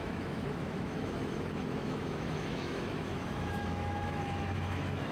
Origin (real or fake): fake